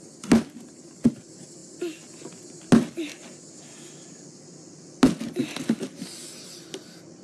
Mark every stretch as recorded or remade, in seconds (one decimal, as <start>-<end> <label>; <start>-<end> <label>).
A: 0.0-7.2 recorded